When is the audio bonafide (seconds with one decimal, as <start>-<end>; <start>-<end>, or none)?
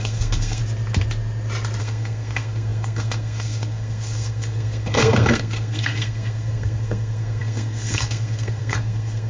0.6-1.8